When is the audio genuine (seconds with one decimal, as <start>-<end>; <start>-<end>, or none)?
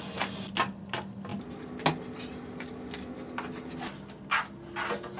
0.0-5.2